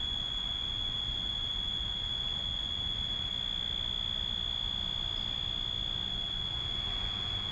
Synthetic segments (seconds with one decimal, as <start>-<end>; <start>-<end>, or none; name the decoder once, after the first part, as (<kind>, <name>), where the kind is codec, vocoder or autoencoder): 0.0-3.3 (vocoder, Vocos); 6.1-7.5

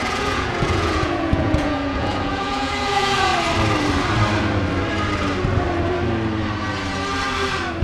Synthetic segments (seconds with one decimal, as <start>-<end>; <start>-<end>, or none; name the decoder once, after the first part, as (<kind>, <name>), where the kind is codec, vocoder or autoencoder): 0.0-3.3 (vocoder, Vocos)

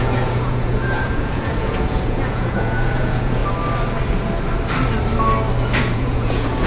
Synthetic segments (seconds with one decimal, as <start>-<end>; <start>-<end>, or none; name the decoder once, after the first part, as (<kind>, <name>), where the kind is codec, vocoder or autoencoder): 0.0-3.4 (vocoder, Vocos); 5.8-6.7

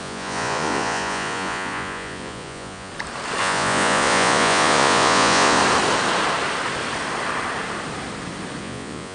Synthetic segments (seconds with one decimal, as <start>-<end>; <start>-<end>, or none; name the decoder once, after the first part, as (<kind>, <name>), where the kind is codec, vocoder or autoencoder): 0.0-2.9 (vocoder, Vocos); 3.4-5.6; 8.6-9.1